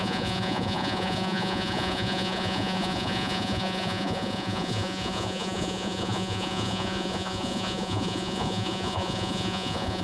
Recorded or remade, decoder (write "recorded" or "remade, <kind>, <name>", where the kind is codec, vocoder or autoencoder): remade, vocoder, Vocos